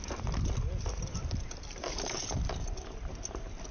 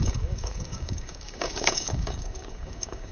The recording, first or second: first